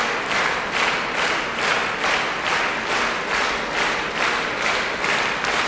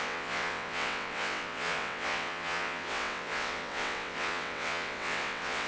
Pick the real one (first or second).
first